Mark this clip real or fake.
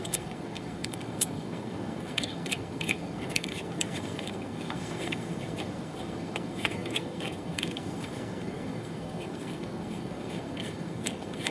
fake